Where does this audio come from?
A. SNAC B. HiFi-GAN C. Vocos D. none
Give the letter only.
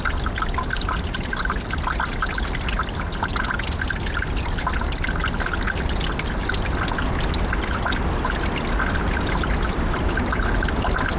D